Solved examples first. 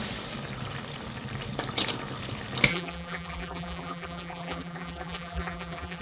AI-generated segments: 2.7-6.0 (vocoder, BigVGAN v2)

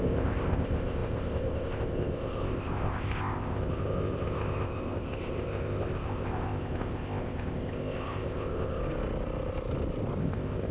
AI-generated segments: 0.0-8.8 (codec, ZipCodec); 10.2-10.7

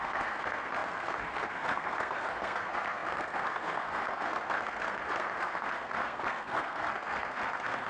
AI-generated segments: 0.0-7.9 (codec, SNAC)